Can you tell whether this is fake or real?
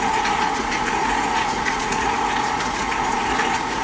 fake